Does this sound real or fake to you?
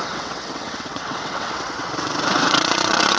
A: fake